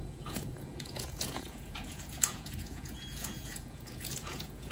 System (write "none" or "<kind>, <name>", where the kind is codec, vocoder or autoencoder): vocoder, Vocos